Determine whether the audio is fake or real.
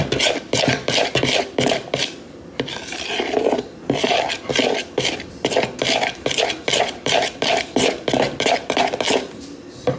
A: fake